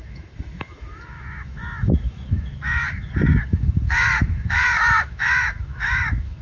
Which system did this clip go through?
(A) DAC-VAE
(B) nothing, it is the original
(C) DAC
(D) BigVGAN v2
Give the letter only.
A